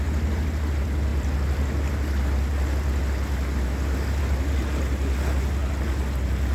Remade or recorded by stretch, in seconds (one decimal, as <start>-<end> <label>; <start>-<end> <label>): 0.0-6.5 recorded